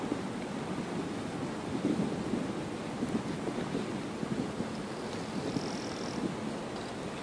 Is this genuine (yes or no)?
yes